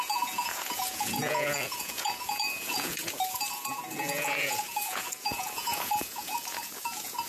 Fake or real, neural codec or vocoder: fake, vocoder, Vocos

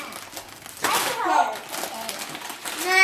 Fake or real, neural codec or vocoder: real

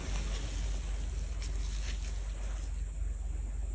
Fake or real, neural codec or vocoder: real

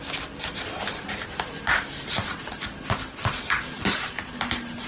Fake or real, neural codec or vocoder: real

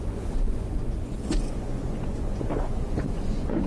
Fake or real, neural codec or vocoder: fake, vocoder, Vocos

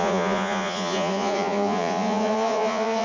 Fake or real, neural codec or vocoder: fake, vocoder, Vocos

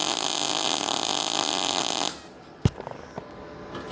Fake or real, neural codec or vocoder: real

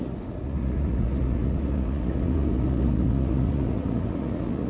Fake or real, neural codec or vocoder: fake, vocoder, Vocos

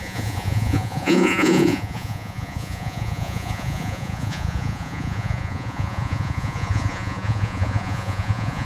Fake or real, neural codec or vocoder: fake, vocoder, Vocos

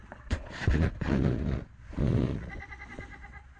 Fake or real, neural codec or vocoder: fake, vocoder, Vocos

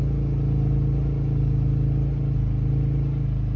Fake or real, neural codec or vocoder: real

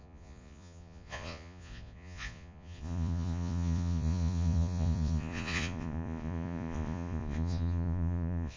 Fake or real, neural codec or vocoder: fake, vocoder, Vocos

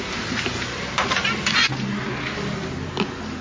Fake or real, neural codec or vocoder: real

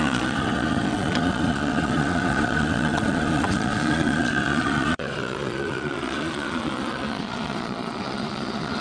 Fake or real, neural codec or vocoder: fake, vocoder, Vocos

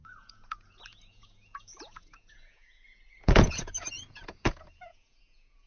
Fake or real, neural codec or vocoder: fake, vocoder, Vocos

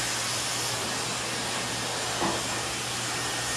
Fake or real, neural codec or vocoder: real